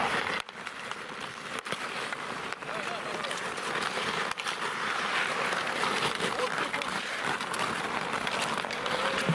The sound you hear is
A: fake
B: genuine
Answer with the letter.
B